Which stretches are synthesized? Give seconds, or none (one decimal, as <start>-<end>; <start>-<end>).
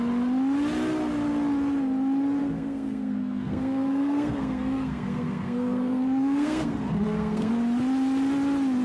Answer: 2.4-7.5